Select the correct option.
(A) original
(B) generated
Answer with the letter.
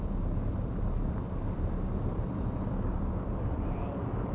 B